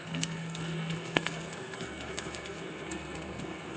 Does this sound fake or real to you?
fake